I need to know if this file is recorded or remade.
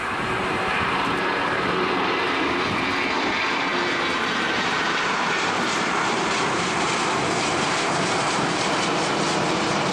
remade